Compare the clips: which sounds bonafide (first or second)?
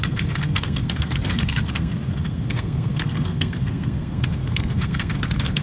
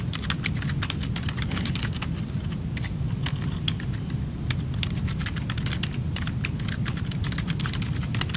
second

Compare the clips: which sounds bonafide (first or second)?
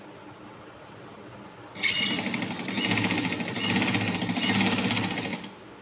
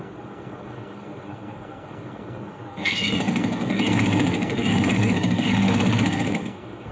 first